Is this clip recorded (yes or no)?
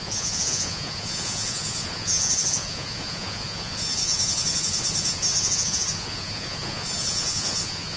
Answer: no